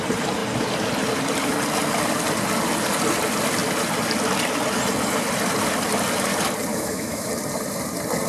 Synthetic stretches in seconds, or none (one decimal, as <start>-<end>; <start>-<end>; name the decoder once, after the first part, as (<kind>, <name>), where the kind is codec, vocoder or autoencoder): 6.7-7.3 (autoencoder, DAC-VAE)